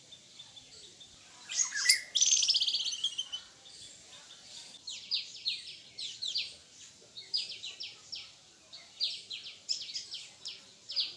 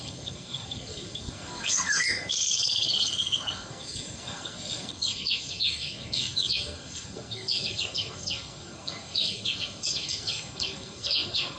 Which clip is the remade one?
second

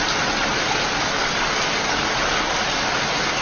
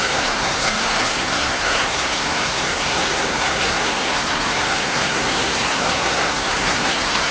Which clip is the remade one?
second